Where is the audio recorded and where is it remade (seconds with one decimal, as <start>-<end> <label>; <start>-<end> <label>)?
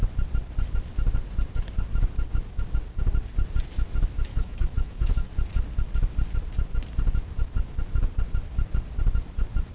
0.0-4.3 recorded; 4.3-5.3 remade; 5.3-9.7 recorded